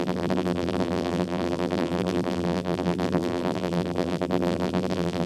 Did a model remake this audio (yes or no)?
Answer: yes